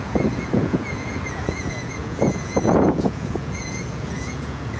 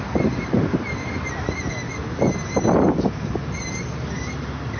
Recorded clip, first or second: second